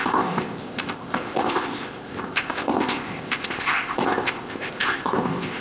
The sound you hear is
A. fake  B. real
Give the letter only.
A